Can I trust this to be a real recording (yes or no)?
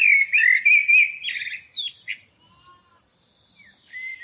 yes